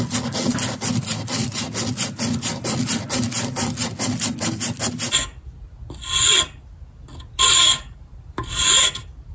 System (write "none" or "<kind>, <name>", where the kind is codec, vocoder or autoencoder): none